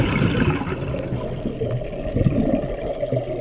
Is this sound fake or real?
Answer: real